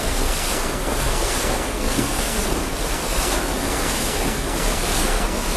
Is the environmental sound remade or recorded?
remade